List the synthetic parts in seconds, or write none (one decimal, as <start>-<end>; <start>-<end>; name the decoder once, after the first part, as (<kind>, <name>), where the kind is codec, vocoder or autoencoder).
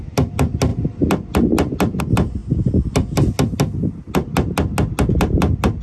none